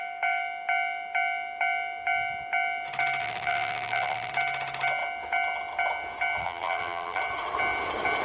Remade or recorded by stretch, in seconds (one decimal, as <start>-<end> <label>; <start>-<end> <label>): 0.0-3.2 recorded; 3.2-4.3 remade; 4.3-6.4 recorded; 6.4-7.2 remade; 7.2-8.2 recorded

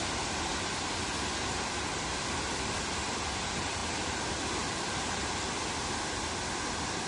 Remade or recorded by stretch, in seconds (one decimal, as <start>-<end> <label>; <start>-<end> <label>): 0.0-7.1 recorded

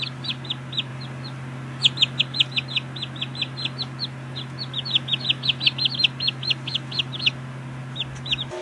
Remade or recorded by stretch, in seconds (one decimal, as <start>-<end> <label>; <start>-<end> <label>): 0.0-8.6 recorded

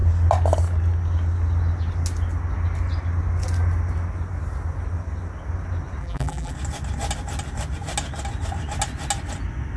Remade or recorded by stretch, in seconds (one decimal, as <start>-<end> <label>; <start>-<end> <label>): 0.0-6.0 recorded; 6.0-6.5 remade; 6.5-9.8 recorded

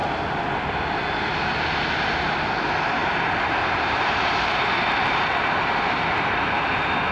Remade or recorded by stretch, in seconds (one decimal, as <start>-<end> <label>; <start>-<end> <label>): 0.0-3.0 recorded; 3.0-6.5 remade; 6.5-7.1 recorded